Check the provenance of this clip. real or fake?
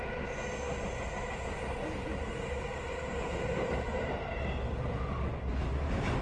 real